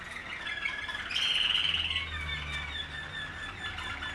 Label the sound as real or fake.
real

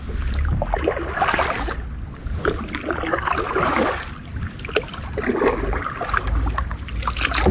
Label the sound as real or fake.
real